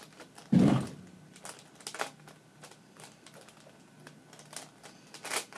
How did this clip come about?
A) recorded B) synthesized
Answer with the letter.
A